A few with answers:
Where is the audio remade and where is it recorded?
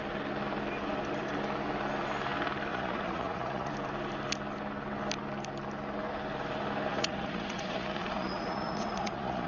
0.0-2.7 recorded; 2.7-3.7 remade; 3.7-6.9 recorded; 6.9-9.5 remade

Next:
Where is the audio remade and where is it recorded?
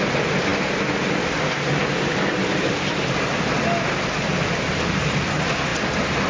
0.0-6.3 recorded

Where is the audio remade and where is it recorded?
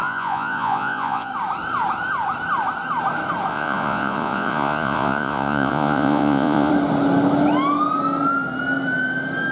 0.0-1.3 remade; 1.3-3.5 recorded; 3.5-6.7 remade; 6.7-9.5 recorded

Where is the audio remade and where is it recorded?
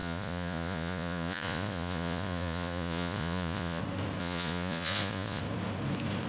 0.0-3.8 remade; 3.8-4.2 recorded; 4.2-5.4 remade; 5.4-6.3 recorded